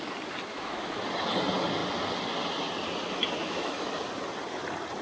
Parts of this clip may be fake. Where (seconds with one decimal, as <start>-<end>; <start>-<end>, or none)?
0.5-1.0; 3.4-3.9

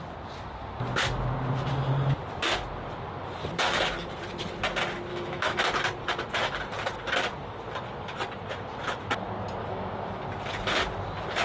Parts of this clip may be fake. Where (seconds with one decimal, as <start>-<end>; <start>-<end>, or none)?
5.1-5.6; 9.6-10.2

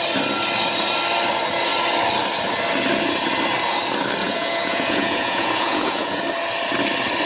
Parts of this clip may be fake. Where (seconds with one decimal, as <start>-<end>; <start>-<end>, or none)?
4.2-6.2

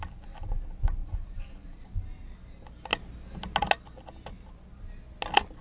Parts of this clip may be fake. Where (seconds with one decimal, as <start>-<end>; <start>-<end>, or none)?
1.0-1.8

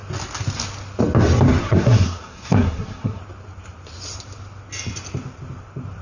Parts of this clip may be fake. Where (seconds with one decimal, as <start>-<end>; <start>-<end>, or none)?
1.6-3.2

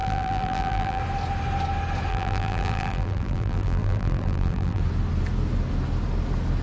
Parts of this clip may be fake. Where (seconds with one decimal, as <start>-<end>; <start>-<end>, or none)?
0.0-1.0; 2.1-4.8